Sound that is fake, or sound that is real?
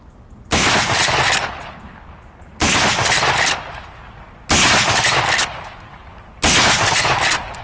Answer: real